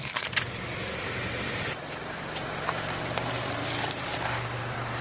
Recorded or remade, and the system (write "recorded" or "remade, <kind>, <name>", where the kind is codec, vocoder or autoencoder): remade, vocoder, BigVGAN v2